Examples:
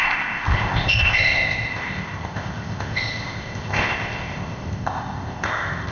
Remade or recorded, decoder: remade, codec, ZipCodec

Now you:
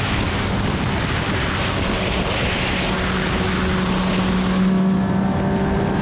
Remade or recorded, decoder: recorded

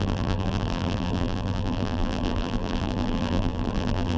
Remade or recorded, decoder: remade, vocoder, BigVGAN v2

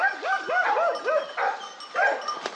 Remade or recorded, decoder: recorded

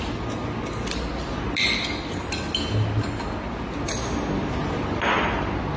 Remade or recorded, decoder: recorded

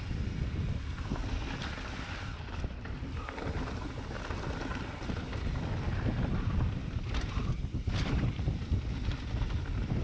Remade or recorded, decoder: recorded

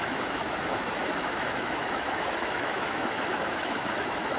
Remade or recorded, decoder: remade, autoencoder, DAC-VAE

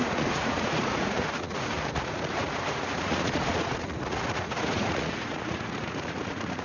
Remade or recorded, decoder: remade, vocoder, Vocos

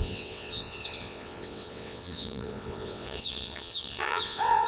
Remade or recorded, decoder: remade, vocoder, WaveNeXt